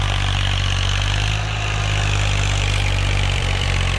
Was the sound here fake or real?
fake